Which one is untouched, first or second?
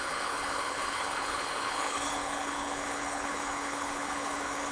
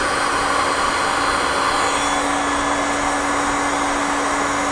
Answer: second